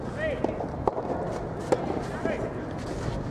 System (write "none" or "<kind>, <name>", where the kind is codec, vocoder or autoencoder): none